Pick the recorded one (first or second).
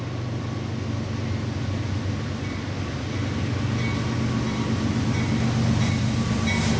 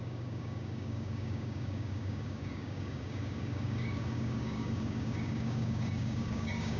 first